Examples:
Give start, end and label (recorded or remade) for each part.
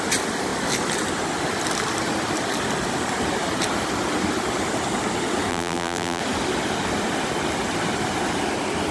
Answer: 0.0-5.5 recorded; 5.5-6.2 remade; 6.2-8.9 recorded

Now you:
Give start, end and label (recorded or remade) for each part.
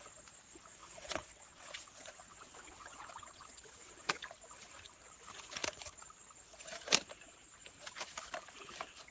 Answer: 0.0-0.8 recorded; 0.8-4.1 remade; 4.1-9.1 recorded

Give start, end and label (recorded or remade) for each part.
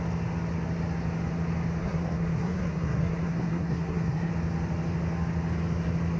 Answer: 0.0-1.8 recorded; 1.8-4.3 remade; 4.3-6.2 recorded